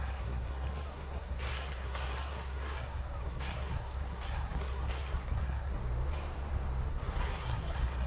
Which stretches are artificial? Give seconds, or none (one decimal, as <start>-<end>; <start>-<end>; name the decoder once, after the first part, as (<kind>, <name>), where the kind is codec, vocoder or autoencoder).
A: 0.0-5.8 (codec, SNAC); 6.9-8.1